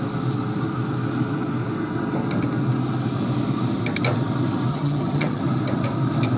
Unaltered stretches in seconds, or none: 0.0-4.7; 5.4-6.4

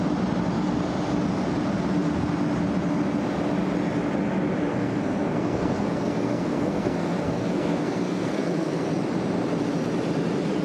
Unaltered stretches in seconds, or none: 0.0-4.7; 8.9-10.6

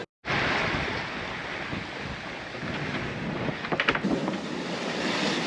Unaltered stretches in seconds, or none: 0.0-5.5

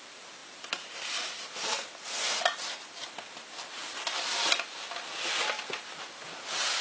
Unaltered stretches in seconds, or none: 0.0-0.4; 2.7-6.8

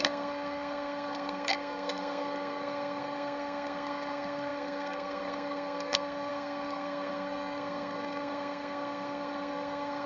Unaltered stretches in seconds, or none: none